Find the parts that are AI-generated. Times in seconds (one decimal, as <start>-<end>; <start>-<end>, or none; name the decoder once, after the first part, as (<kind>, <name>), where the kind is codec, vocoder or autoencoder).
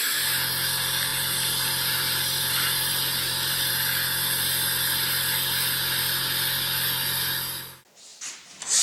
1.1-3.7 (vocoder, BigVGAN v2)